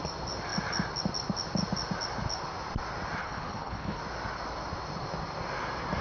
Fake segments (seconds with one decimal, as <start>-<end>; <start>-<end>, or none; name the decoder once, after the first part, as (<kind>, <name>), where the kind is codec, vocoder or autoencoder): 3.2-4.0 (codec, HILCodec)